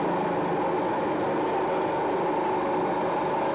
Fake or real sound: real